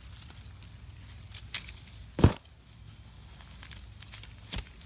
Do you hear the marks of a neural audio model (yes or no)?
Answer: no